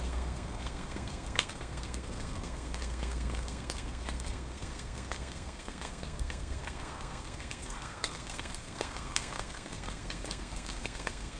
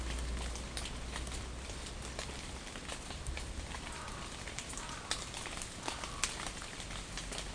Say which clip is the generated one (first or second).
first